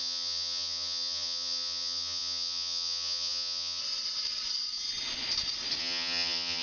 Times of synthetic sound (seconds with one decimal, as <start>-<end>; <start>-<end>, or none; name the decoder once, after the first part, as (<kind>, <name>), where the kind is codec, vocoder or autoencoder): 0.0-3.8 (vocoder, HiFi-GAN); 5.8-6.6